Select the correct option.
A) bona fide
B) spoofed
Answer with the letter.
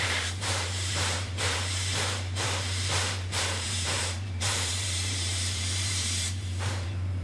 B